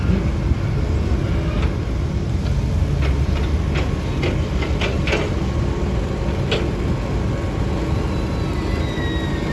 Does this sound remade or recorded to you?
recorded